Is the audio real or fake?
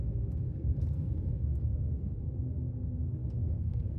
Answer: fake